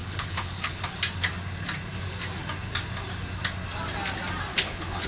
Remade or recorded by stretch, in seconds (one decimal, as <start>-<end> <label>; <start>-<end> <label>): 0.0-0.8 remade; 0.8-4.5 recorded; 4.5-5.1 remade